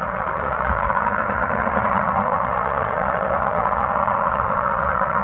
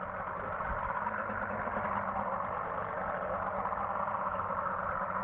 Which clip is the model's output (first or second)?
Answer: first